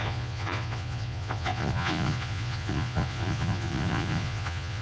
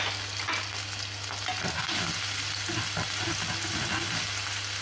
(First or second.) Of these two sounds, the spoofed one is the first